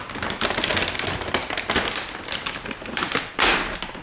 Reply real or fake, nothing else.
real